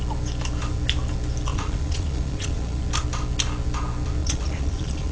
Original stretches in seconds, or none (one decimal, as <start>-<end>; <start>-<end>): 0.0-1.5; 2.8-4.2